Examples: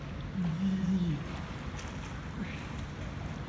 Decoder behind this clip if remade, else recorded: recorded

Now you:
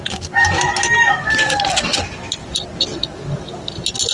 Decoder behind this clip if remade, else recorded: recorded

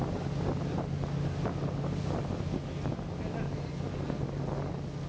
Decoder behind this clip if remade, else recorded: recorded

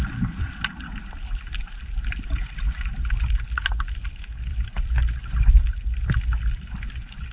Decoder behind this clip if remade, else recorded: recorded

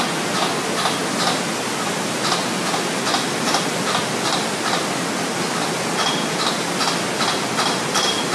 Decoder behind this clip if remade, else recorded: recorded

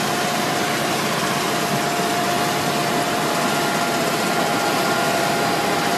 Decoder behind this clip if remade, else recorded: recorded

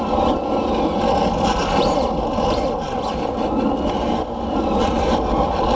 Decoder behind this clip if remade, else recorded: recorded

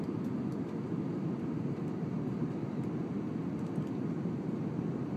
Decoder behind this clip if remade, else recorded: recorded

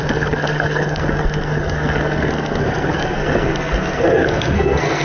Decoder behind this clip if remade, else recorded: remade, codec, SNAC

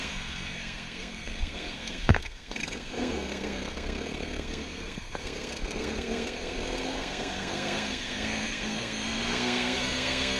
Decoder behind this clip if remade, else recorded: remade, codec, SNAC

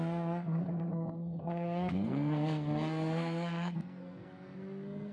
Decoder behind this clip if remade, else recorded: remade, codec, SNAC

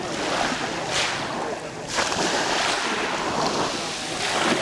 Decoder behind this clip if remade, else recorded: recorded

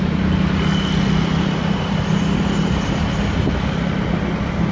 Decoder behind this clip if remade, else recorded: recorded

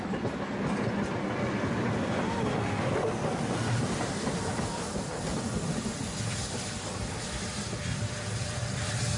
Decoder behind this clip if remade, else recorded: recorded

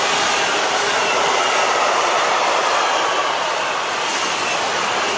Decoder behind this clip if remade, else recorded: recorded